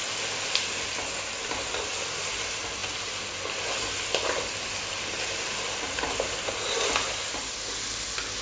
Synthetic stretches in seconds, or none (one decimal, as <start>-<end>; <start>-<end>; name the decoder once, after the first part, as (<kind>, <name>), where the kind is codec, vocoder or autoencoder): none